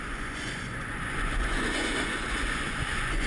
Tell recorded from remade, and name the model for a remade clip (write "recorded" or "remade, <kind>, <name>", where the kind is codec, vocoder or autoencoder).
remade, vocoder, Vocos